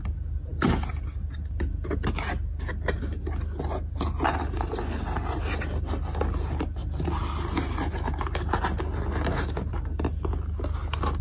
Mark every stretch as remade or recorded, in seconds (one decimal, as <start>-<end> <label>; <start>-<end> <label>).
0.0-11.2 recorded